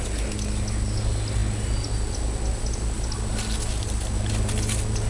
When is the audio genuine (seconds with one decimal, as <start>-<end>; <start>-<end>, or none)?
0.0-5.1